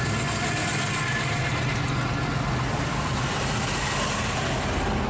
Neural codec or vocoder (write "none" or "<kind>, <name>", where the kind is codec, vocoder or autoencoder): none